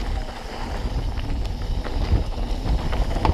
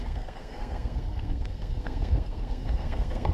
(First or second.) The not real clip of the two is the second